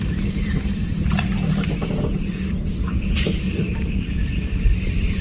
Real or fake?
fake